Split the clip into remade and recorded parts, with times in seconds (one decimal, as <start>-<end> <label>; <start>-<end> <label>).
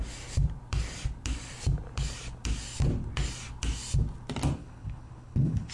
0.0-4.6 recorded; 4.6-5.7 remade